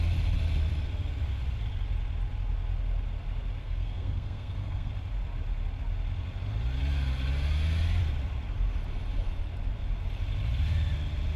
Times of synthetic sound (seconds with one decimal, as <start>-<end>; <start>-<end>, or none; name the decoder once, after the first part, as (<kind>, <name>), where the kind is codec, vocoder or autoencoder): 3.6-4.9 (codec, SNAC)